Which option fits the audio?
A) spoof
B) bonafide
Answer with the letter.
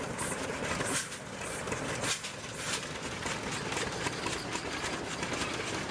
B